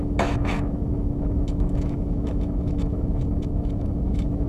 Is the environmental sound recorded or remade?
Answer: remade